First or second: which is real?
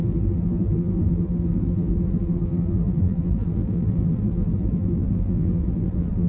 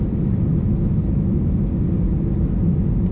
second